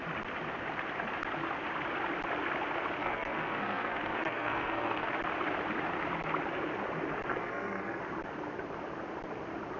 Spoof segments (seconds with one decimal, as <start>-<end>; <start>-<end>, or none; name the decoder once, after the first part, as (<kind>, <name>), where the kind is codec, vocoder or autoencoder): 3.0-5.1 (codec, SNAC); 7.3-8.0